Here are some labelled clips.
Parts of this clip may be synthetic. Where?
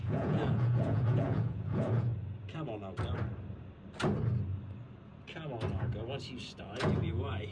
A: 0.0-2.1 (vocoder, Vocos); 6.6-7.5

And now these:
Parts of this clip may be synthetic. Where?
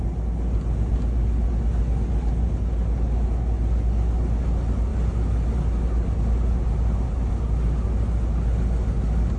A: none